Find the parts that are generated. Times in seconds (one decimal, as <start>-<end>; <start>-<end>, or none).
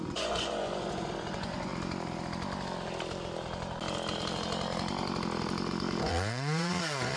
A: 0.0-1.7; 6.0-7.2